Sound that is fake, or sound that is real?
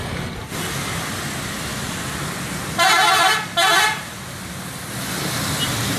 fake